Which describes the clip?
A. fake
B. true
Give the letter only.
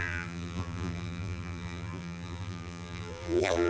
A